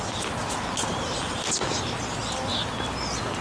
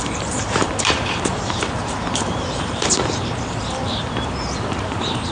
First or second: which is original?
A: first